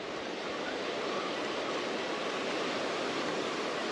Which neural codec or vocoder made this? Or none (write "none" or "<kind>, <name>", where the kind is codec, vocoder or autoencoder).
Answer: none